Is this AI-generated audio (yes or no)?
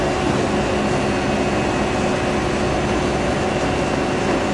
no